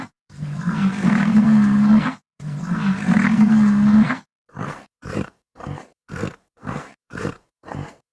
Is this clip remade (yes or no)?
yes